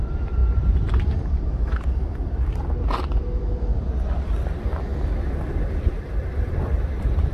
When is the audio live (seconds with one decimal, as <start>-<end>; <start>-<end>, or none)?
4.9-5.5